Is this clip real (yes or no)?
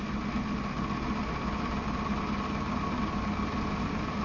yes